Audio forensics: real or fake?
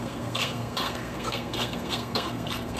fake